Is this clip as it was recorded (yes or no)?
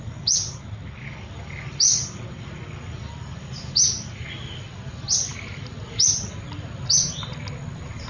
yes